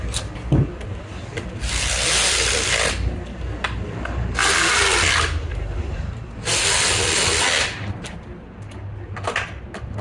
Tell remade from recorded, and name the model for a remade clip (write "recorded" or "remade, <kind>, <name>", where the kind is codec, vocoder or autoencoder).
recorded